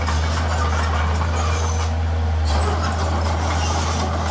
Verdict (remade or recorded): recorded